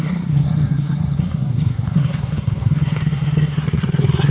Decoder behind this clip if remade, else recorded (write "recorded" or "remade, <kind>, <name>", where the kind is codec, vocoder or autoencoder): remade, codec, SNAC